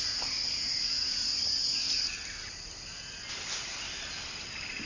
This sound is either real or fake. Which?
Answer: real